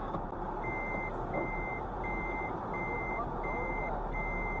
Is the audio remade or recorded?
recorded